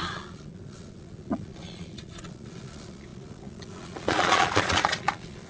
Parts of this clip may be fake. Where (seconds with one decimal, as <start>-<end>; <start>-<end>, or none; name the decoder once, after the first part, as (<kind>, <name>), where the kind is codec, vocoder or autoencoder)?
0.0-5.5 (vocoder, Vocos)